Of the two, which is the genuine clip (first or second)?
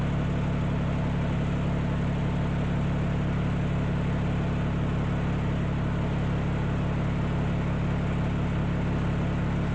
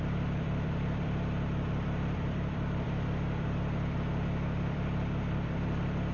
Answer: first